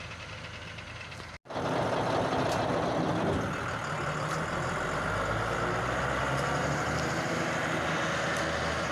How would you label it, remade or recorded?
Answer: recorded